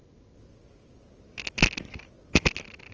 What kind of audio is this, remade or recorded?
recorded